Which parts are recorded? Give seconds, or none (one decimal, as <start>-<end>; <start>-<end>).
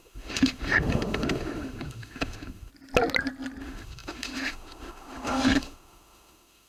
2.7-3.6